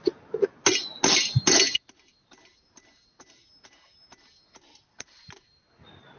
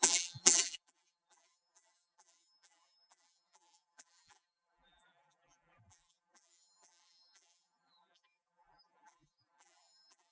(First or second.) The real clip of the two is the first